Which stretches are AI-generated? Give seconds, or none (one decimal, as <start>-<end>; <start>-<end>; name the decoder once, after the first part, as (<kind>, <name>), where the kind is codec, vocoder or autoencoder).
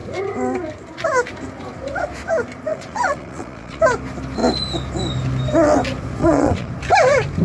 2.7-3.8 (vocoder, Vocos); 6.2-6.7